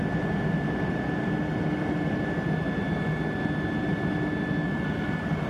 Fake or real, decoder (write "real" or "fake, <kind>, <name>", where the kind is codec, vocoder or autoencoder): real